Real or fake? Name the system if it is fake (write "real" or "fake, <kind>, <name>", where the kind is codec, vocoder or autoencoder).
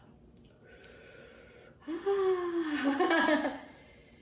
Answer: real